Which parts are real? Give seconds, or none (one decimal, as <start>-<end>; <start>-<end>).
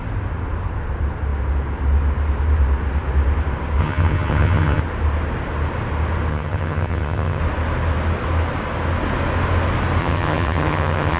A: 0.0-3.8; 4.8-6.3; 7.4-10.0